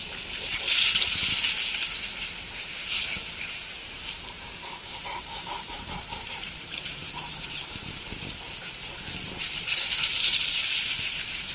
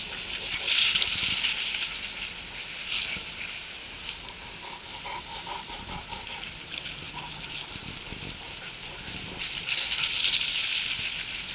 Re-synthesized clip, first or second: first